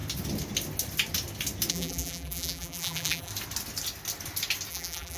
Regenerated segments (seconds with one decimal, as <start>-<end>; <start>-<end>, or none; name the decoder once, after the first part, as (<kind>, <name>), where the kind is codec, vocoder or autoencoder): 1.7-3.3 (vocoder, BigVGAN v2); 4.7-5.2